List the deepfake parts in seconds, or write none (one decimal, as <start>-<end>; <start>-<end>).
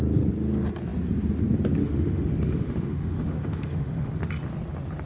1.8-4.1